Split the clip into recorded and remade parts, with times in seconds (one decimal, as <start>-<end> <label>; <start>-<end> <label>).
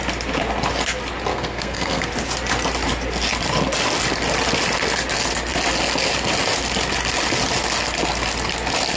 0.0-1.3 recorded; 1.3-2.1 remade; 2.1-9.0 recorded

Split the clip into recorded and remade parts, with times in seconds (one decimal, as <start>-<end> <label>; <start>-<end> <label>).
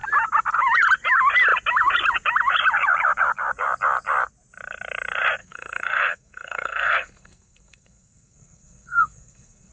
0.0-5.4 recorded; 5.4-9.7 remade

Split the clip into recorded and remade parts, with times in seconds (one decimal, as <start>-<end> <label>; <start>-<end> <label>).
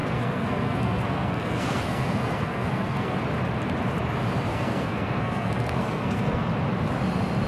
0.0-3.2 remade; 3.2-4.5 recorded; 4.5-6.5 remade; 6.5-7.5 recorded